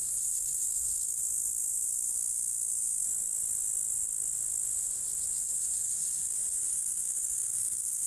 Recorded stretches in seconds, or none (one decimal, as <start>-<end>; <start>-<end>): 1.2-5.4